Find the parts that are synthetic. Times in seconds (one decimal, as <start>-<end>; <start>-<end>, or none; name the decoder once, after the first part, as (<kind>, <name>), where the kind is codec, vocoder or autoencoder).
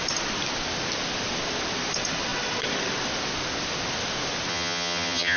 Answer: 4.5-5.4 (vocoder, HiFi-GAN)